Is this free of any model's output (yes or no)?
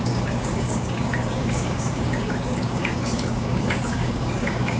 no